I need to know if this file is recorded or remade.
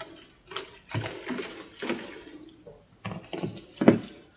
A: recorded